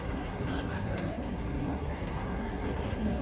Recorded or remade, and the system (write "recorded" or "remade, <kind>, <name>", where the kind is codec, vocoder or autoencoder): remade, codec, SNAC